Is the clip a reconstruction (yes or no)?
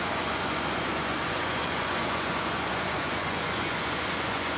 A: yes